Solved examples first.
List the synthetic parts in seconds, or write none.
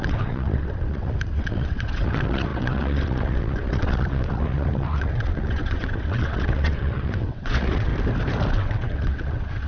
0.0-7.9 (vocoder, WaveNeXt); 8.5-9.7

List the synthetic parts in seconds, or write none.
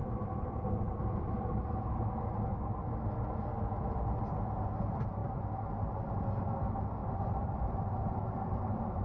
0.0-2.9 (vocoder, BigVGAN v2); 7.0-9.0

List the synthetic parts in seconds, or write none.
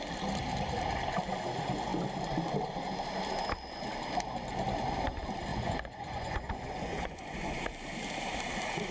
5.5-7.6 (vocoder, Vocos)